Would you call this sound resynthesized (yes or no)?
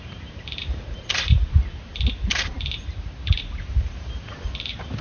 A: yes